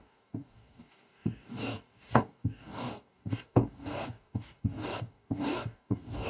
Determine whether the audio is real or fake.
fake